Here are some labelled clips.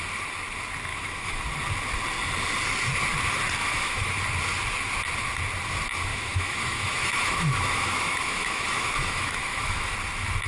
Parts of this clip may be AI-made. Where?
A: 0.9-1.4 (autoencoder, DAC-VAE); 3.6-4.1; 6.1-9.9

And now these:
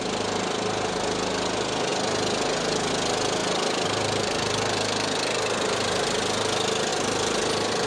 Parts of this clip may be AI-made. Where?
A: none

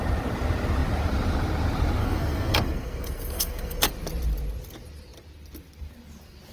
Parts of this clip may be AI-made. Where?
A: 2.0-3.9 (codec, SNAC)